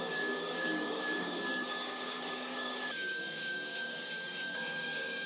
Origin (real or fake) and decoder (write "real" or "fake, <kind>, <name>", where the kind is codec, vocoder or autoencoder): fake, codec, DAC